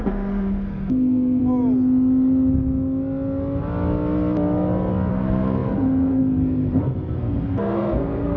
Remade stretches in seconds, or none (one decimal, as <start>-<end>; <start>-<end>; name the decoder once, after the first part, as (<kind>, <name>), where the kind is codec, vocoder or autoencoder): 0.0-1.4 (codec, SNAC); 5.1-8.4